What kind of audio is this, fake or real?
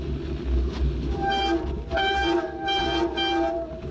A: real